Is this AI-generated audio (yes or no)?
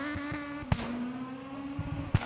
no